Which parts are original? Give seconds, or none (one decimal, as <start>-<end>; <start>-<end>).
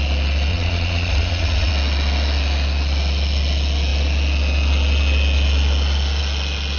0.0-0.5; 1.7-6.8